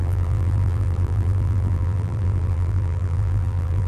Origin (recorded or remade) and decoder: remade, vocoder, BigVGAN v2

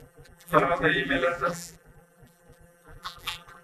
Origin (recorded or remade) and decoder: remade, vocoder, BigVGAN v2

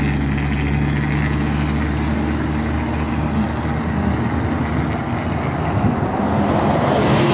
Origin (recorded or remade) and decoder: recorded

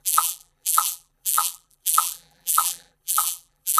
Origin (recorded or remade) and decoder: remade, vocoder, BigVGAN v2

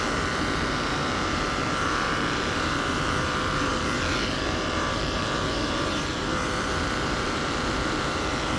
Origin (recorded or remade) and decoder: remade, vocoder, BigVGAN v2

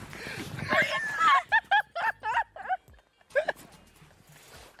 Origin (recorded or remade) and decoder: recorded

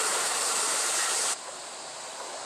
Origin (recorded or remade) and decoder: remade, vocoder, BigVGAN v2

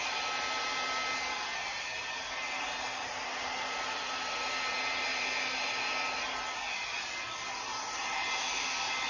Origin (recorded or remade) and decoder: recorded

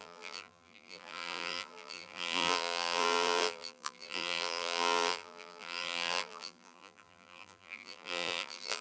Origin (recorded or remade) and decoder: remade, vocoder, BigVGAN v2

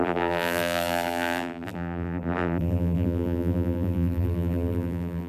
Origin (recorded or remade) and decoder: remade, vocoder, BigVGAN v2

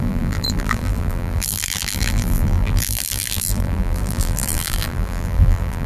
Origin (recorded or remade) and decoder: remade, vocoder, BigVGAN v2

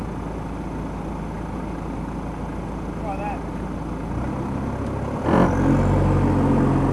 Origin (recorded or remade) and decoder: recorded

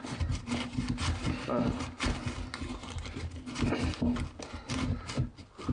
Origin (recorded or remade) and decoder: recorded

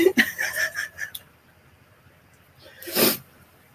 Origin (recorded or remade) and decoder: remade, vocoder, BigVGAN v2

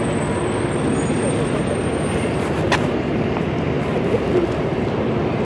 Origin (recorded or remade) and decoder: recorded